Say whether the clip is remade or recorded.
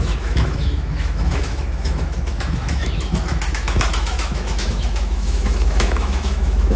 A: remade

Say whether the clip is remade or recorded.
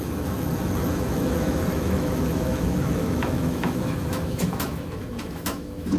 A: remade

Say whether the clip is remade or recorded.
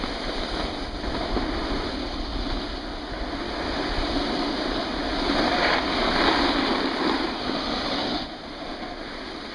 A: recorded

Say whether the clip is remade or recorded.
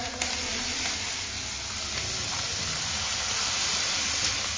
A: remade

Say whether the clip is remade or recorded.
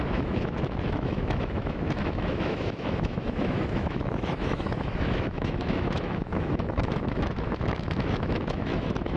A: remade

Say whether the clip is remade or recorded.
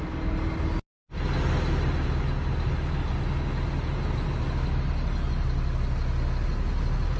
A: recorded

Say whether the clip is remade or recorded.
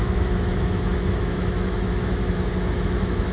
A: remade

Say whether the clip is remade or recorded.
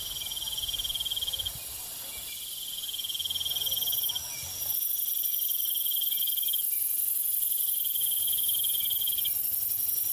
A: recorded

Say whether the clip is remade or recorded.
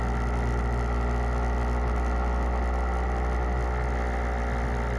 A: recorded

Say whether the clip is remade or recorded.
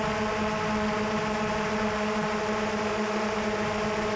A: recorded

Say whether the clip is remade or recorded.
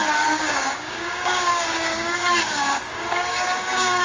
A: remade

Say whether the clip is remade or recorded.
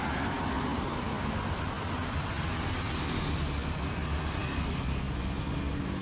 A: recorded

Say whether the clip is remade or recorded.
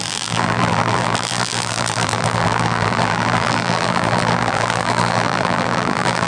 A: remade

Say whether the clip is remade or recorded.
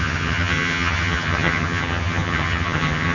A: remade